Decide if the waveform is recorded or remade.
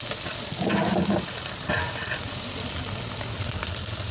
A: recorded